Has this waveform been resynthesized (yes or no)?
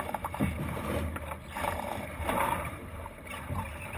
yes